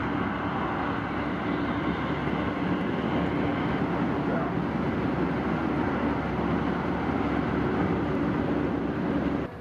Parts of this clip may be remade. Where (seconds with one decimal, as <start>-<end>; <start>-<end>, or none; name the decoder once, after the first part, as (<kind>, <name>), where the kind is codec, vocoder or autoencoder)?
3.5-4.0 (vocoder, BigVGAN v2); 5.6-9.6